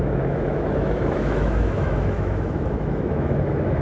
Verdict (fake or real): fake